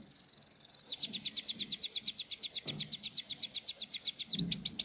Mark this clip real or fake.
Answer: real